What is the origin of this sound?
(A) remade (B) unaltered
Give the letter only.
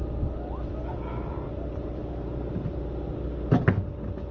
B